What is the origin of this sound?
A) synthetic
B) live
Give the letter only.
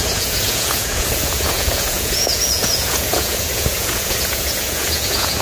A